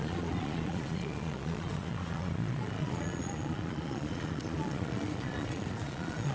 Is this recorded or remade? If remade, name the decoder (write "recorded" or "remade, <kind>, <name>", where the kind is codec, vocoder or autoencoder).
remade, vocoder, Vocos